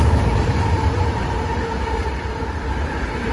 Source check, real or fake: fake